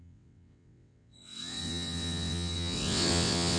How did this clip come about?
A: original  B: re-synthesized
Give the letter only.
B